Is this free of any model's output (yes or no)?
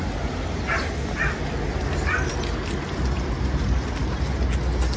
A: yes